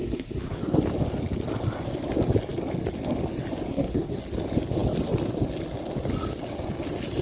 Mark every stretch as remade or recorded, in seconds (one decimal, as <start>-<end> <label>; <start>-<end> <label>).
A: 0.0-0.6 remade; 0.6-3.7 recorded; 3.7-4.2 remade; 4.2-7.2 recorded